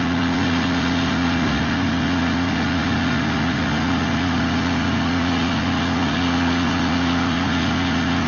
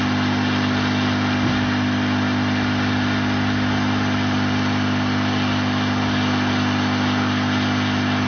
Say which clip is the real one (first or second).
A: second